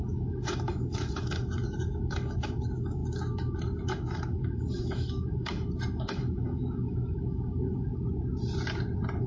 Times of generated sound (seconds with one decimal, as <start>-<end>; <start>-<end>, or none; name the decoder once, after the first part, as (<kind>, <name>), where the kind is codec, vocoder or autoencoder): 0.0-7.9 (autoencoder, DAC-VAE)